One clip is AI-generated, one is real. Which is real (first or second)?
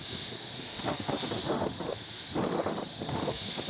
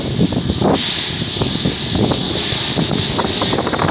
second